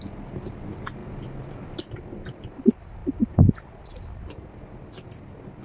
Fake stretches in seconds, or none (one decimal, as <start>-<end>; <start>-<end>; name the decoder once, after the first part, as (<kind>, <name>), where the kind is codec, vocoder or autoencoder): none